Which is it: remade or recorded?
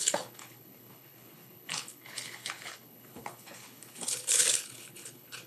remade